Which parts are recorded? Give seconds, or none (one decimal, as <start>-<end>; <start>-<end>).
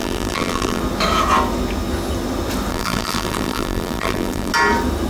0.8-2.7; 4.5-5.1